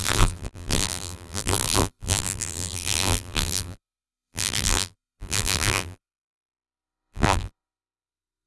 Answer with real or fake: fake